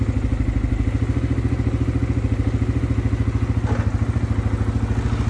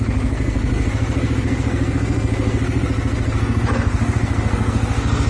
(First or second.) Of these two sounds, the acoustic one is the first